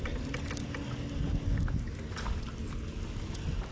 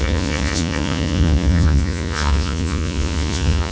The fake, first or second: second